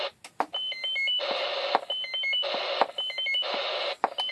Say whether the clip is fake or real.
real